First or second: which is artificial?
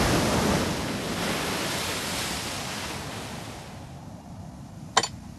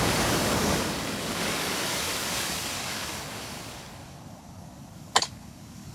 second